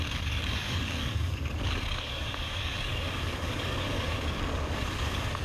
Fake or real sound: fake